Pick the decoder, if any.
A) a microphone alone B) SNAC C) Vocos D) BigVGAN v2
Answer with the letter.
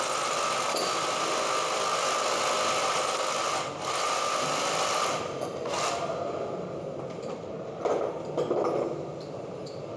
A